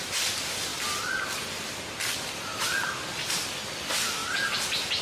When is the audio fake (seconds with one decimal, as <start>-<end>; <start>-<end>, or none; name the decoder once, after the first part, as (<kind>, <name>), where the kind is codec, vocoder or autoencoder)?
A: none